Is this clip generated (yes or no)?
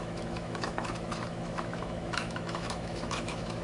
yes